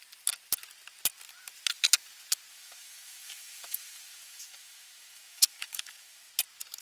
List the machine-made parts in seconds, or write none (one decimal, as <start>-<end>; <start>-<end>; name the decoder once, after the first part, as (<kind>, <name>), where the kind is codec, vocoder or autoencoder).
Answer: 2.5-6.3 (autoencoder, DAC-VAE)